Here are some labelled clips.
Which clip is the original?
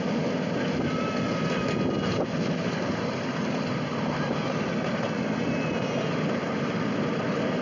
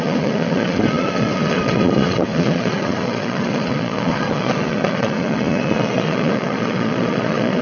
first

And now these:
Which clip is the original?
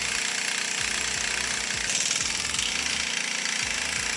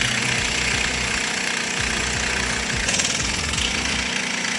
first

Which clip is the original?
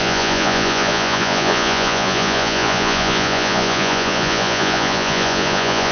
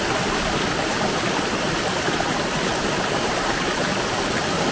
second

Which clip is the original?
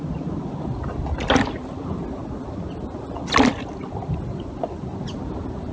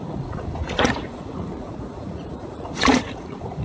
first